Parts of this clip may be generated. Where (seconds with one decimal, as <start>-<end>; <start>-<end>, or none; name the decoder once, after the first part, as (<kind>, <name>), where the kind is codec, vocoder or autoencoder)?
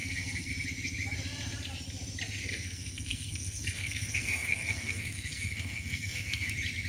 0.0-0.5 (codec, SNAC); 2.4-6.5